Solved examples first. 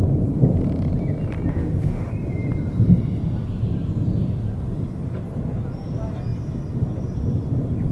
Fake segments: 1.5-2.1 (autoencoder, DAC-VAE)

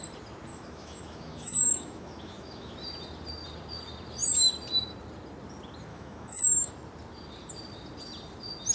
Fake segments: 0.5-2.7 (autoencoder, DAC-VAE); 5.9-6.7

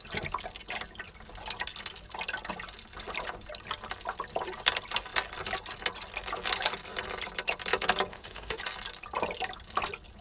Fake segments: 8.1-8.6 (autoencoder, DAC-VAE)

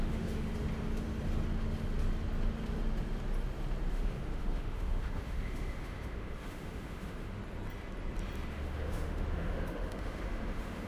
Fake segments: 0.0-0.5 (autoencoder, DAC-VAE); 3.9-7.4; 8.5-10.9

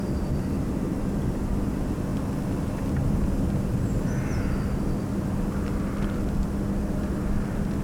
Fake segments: none

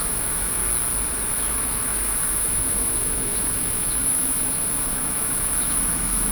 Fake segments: 0.0-0.6 (autoencoder, DAC-VAE); 1.3-6.3